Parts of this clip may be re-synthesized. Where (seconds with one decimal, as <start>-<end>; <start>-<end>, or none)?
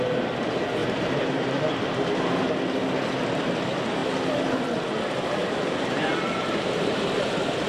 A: 0.8-2.3; 5.4-7.3